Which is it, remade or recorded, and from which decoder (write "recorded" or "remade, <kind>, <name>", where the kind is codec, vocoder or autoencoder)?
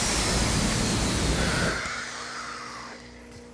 recorded